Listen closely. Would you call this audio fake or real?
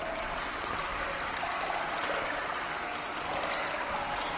real